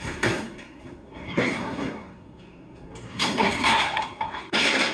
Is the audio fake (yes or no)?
yes